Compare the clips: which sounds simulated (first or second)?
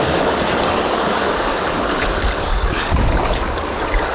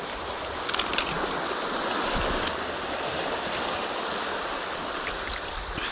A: first